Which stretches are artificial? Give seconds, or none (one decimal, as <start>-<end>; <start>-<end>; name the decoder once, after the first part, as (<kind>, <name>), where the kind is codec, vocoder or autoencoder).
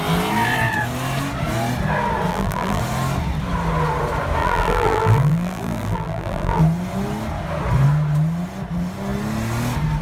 2.3-2.8 (vocoder, BigVGAN v2); 4.4-6.6